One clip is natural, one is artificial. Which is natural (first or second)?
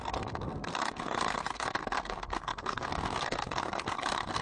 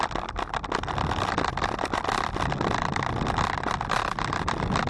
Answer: second